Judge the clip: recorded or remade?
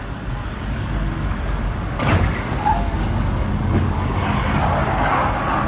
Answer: remade